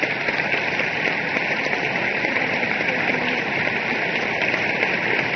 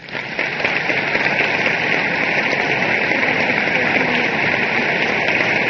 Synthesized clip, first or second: first